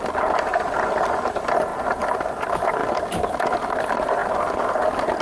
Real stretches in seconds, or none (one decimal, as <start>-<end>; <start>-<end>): 0.0-5.2